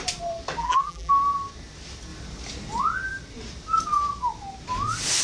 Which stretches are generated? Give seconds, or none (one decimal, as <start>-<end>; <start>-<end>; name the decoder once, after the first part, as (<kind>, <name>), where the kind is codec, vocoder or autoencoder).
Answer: 0.6-1.1 (vocoder, BigVGAN v2)